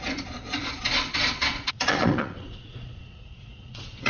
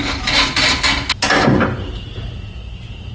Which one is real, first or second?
second